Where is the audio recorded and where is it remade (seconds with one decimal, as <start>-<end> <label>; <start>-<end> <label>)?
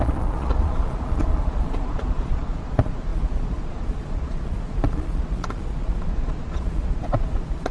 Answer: 0.0-7.7 remade